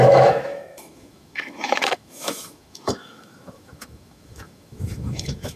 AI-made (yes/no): yes